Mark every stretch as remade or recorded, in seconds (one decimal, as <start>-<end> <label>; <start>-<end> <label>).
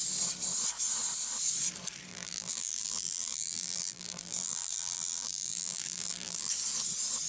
0.0-2.1 recorded; 2.1-6.5 remade; 6.5-7.3 recorded